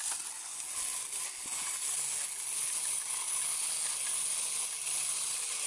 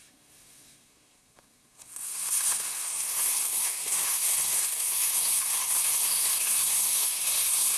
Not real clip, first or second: second